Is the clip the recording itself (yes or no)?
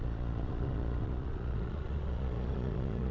no